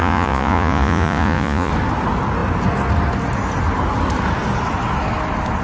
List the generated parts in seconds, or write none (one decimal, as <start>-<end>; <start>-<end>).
0.0-1.7